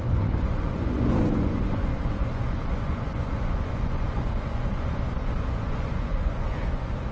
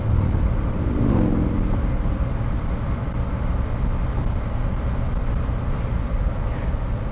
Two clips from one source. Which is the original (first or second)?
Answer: second